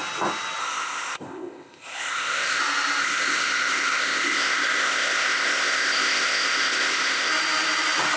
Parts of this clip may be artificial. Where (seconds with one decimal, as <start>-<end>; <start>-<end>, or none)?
0.6-2.6; 3.0-7.3